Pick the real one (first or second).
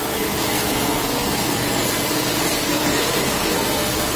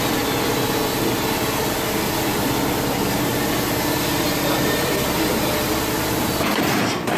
second